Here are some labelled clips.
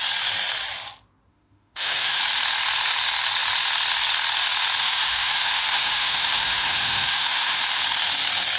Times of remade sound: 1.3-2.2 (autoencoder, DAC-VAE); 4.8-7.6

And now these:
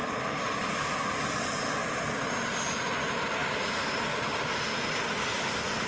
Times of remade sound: none

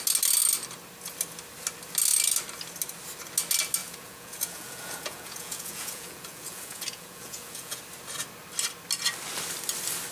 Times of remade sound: 3.8-7.8 (vocoder, Vocos)